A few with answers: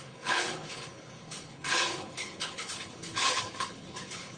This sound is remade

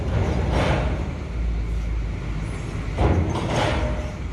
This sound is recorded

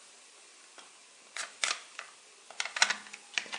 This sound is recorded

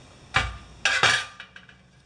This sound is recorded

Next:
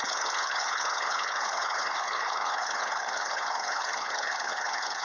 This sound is remade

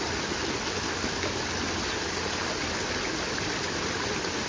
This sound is recorded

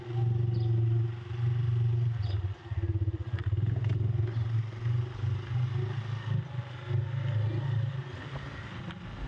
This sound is recorded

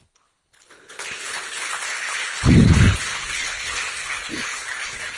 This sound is remade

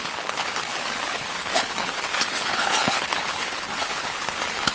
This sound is remade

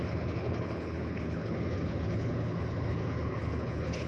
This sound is remade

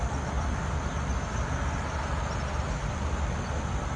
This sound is recorded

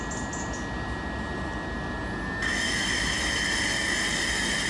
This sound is recorded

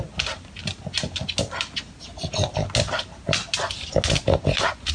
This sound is recorded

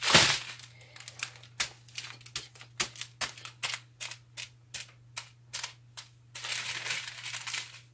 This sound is recorded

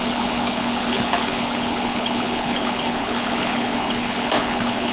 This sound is remade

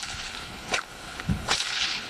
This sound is remade